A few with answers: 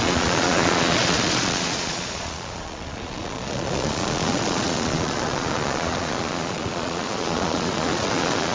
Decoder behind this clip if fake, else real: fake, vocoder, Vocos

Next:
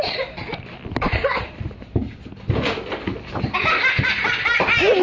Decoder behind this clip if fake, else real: real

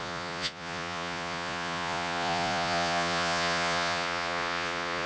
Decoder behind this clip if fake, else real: fake, vocoder, Vocos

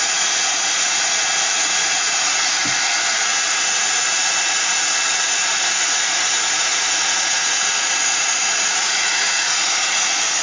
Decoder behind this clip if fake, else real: fake, vocoder, Vocos